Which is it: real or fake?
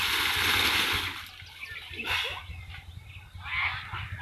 real